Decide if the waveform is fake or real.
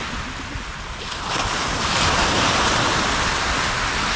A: real